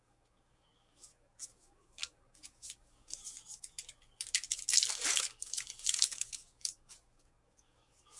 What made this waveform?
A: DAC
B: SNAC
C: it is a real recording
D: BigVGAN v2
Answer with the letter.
A